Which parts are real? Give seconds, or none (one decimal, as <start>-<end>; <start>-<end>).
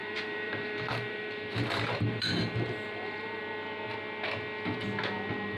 3.4-5.6